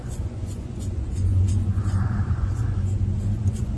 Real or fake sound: fake